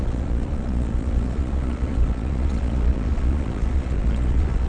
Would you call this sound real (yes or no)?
no